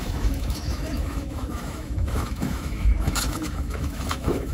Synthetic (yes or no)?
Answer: yes